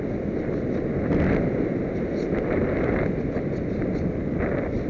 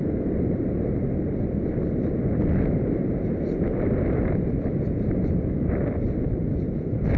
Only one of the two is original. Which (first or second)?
first